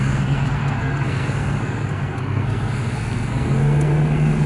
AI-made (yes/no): yes